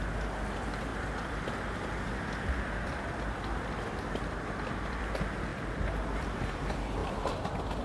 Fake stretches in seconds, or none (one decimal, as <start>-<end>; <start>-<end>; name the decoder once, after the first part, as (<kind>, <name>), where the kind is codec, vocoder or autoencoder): 0.9-5.1 (vocoder, BigVGAN v2); 5.5-6.3; 7.0-7.8

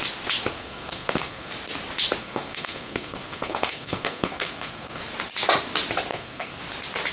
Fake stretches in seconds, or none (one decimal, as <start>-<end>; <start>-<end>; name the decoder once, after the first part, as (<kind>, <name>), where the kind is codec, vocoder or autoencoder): 0.5-1.5 (codec, SNAC); 2.2-5.0; 6.1-6.6

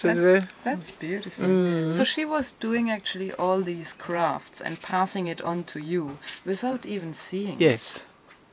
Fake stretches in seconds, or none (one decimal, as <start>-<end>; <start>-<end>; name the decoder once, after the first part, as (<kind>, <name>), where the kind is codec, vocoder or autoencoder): 0.6-2.0 (vocoder, Vocos); 3.6-4.3; 4.9-7.0

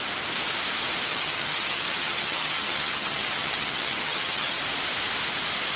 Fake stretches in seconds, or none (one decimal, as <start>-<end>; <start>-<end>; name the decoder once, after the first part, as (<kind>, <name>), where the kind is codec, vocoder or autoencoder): 1.1-4.6 (vocoder, HiFi-GAN)

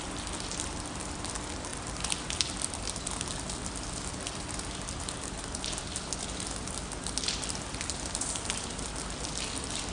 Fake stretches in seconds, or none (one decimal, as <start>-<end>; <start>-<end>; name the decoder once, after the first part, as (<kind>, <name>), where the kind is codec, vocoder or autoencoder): none

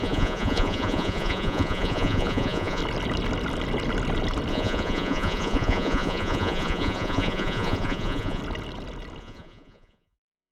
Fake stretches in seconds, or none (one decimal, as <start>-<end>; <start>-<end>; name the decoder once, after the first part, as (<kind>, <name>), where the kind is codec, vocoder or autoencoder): 0.0-2.8 (vocoder, Vocos); 4.5-8.4; 9.2-10.5

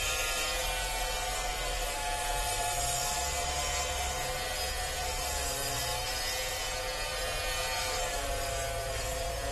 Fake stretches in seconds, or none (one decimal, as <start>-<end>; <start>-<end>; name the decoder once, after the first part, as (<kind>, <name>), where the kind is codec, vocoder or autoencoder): none